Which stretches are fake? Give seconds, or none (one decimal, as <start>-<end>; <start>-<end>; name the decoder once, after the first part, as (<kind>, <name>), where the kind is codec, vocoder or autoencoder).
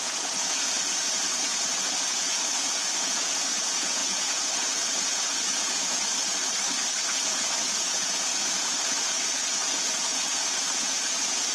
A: 0.0-6.1 (vocoder, Vocos); 7.0-11.5